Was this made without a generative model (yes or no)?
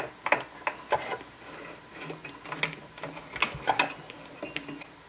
yes